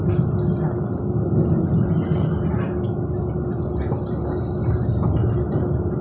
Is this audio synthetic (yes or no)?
no